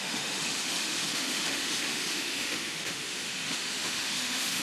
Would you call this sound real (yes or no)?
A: no